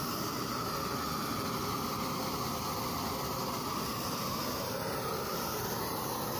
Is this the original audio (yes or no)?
yes